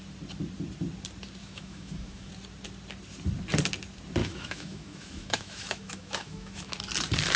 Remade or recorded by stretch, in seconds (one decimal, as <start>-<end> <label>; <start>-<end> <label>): 0.0-1.4 recorded; 1.4-2.3 remade; 2.3-4.2 recorded; 4.2-6.8 remade; 6.8-7.4 recorded